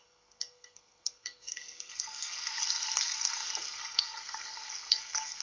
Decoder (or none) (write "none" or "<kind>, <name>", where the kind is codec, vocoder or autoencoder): codec, SNAC